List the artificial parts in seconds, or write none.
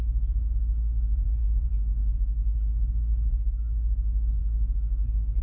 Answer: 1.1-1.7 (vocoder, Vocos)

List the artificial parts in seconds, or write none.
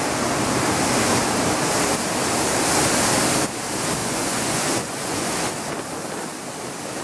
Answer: 4.0-5.3 (vocoder, Vocos)